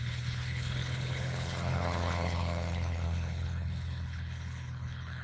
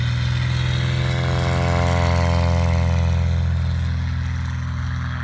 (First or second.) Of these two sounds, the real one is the second